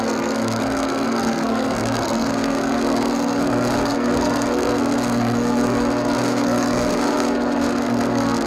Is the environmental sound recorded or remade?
remade